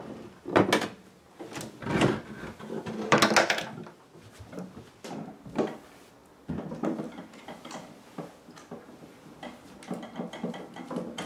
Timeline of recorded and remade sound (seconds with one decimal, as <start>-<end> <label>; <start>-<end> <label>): 0.0-11.3 recorded

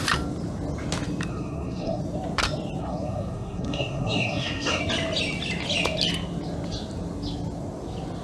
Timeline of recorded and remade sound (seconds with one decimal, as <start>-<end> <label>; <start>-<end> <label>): 0.0-1.3 recorded; 1.3-2.0 remade; 2.0-2.8 recorded; 2.8-4.8 remade; 4.8-8.2 recorded